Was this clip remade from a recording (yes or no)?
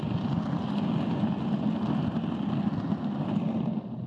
no